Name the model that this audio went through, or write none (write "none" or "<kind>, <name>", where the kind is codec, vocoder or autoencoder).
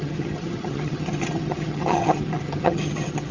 vocoder, HiFi-GAN